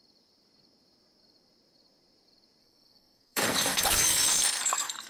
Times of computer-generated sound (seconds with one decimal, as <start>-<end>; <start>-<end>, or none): 2.6-5.1